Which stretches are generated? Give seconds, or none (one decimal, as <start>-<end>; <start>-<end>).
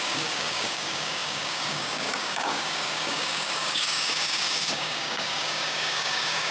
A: 0.0-6.5